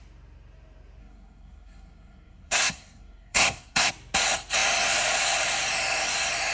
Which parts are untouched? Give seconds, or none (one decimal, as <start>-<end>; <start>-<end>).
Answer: 0.0-1.0; 3.9-6.5